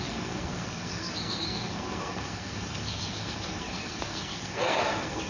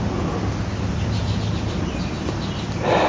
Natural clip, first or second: second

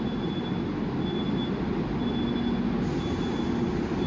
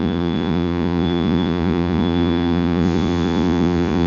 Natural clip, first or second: first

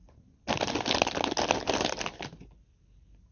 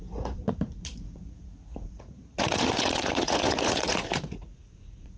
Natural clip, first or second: first